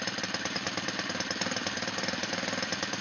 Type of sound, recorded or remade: recorded